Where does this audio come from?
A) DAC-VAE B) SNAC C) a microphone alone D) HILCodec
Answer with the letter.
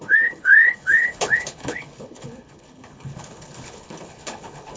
D